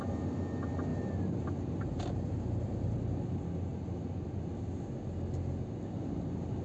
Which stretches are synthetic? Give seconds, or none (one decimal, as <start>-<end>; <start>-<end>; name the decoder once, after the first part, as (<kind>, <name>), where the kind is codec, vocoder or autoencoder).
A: 0.9-2.9 (vocoder, BigVGAN v2); 3.7-4.6